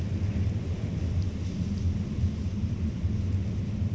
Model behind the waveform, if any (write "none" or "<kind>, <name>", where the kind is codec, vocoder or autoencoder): none